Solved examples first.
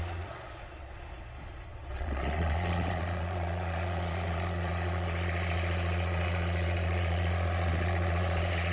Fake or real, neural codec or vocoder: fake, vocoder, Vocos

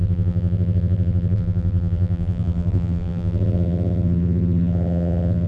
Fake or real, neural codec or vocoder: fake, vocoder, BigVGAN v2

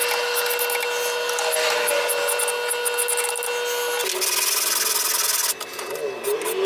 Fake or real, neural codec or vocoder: real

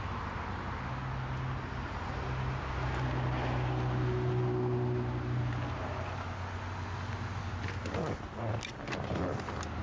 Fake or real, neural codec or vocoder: real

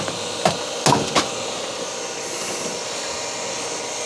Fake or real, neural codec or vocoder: real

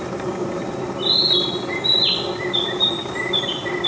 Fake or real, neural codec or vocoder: real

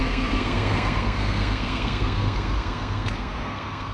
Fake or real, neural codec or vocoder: fake, codec, SNAC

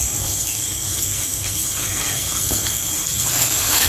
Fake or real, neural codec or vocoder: fake, codec, SNAC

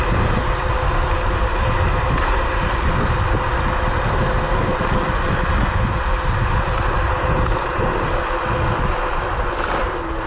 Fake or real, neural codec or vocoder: real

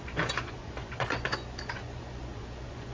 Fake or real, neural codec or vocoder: fake, vocoder, Vocos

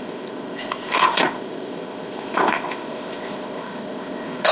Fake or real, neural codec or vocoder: fake, codec, ZipCodec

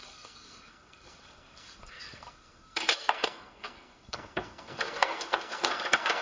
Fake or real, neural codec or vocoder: fake, codec, SNAC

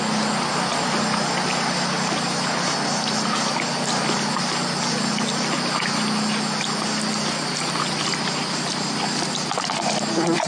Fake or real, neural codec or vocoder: real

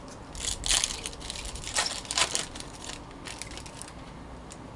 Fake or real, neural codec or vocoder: real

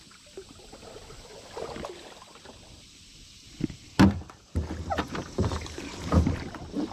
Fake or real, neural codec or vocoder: real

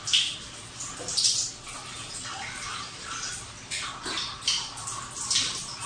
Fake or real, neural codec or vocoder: real